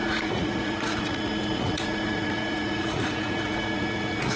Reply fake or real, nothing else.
fake